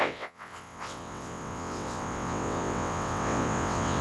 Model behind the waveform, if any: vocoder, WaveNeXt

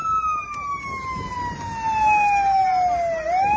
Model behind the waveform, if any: none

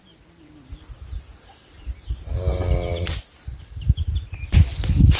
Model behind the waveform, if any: none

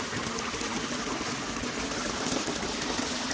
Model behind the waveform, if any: none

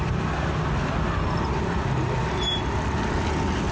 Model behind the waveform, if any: none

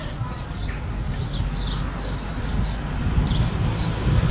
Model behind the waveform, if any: none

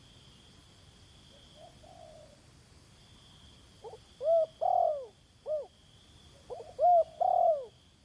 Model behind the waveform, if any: none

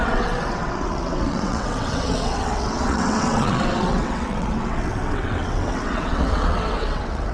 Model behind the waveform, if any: vocoder, WaveNeXt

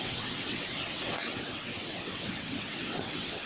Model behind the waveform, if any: vocoder, WaveNeXt